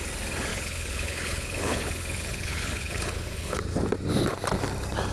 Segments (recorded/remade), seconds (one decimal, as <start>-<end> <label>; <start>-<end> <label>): 0.0-0.5 recorded; 0.5-3.6 remade; 3.6-5.1 recorded

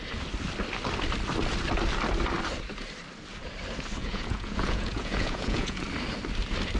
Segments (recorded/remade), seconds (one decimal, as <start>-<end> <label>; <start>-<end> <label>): 0.0-4.0 recorded; 4.0-5.8 remade; 5.8-6.8 recorded

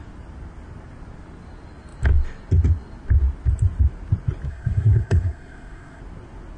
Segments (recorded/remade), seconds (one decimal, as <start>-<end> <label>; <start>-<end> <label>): 0.0-4.5 recorded; 4.5-6.0 remade; 6.0-6.6 recorded

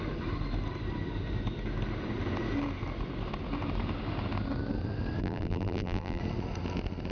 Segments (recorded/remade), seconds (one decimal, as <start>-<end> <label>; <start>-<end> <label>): 0.0-5.2 recorded; 5.2-6.2 remade; 6.2-7.1 recorded